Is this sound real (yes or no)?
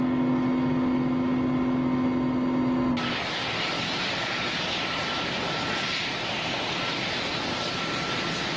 yes